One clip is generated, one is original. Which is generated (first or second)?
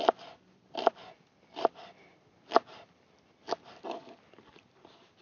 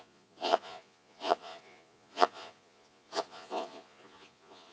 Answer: second